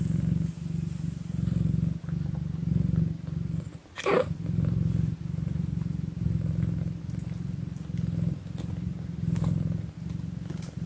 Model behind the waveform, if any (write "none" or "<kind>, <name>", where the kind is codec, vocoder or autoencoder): none